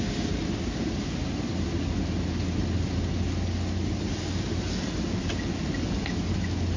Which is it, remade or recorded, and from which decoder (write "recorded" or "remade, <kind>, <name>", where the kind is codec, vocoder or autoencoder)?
recorded